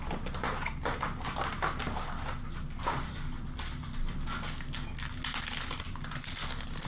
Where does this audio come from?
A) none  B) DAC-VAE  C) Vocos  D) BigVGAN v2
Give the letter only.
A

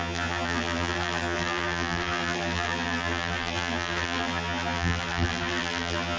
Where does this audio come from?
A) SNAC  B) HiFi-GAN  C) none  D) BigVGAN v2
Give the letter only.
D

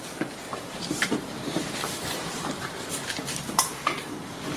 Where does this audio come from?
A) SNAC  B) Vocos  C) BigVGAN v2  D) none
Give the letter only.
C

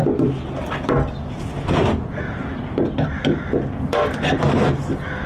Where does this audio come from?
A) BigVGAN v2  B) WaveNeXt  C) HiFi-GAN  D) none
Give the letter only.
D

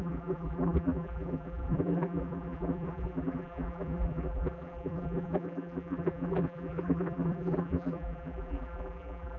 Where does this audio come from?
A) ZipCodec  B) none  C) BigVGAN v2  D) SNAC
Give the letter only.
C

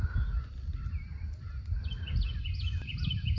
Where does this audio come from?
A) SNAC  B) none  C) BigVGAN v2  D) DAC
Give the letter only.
B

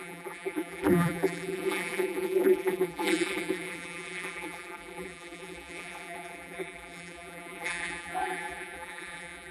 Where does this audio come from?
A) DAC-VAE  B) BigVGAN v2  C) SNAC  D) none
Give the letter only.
B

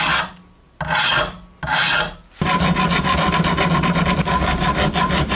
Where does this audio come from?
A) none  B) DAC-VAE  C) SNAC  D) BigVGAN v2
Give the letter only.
A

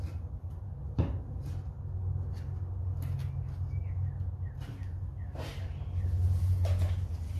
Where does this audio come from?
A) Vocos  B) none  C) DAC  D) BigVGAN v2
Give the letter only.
B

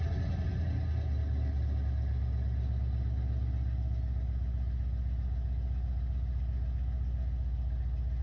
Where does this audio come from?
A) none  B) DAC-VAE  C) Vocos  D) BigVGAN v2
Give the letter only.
A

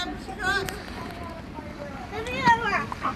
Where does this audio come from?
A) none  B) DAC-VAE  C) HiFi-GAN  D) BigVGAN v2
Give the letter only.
A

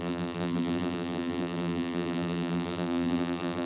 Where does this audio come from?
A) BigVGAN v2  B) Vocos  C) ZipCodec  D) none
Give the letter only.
A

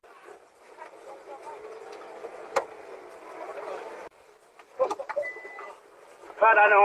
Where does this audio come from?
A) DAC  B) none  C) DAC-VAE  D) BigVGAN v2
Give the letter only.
B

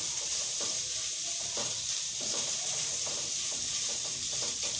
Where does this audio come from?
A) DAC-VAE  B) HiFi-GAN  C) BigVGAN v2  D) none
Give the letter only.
C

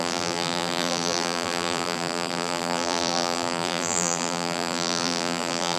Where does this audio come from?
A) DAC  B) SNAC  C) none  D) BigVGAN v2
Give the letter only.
D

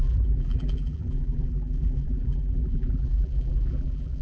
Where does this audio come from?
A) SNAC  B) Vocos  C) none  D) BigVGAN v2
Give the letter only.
D